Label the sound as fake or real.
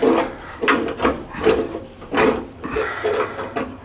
real